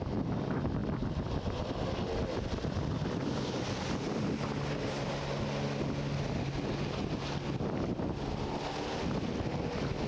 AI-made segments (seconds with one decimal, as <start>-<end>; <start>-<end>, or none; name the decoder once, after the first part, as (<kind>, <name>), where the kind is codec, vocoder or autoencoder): none